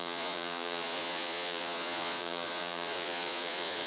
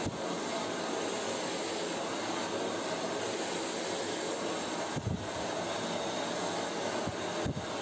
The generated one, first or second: first